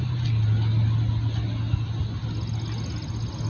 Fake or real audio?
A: real